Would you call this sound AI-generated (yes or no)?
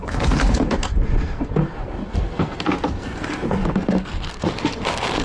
yes